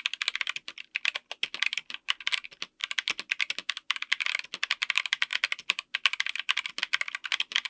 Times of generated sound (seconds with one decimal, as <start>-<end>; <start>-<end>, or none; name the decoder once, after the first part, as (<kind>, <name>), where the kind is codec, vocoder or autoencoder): none